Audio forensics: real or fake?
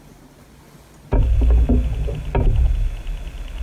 real